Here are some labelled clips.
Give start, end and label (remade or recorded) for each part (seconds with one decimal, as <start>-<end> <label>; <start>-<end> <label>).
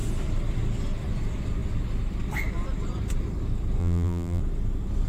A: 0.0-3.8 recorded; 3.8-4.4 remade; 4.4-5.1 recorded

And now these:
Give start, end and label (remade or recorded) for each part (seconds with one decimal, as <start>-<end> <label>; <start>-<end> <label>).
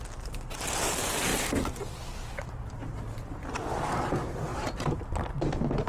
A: 0.0-1.3 recorded; 1.3-3.1 remade; 3.1-4.5 recorded; 4.5-5.0 remade; 5.0-5.9 recorded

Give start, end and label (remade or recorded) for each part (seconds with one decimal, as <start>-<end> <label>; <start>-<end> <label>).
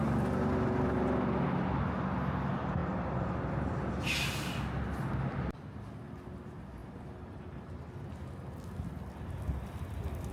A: 0.0-6.8 recorded; 6.8-7.9 remade; 7.9-10.3 recorded